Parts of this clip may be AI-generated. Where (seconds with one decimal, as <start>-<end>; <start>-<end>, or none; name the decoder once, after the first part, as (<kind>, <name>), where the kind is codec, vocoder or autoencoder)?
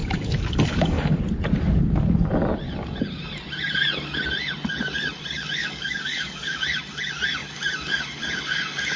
0.0-1.2 (codec, DAC); 5.6-6.6